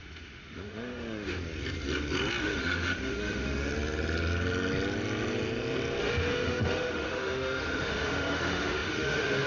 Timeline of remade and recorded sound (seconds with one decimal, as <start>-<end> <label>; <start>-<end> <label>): 0.0-1.4 remade; 1.4-2.4 recorded; 2.4-3.7 remade; 3.7-6.0 recorded; 6.0-9.5 remade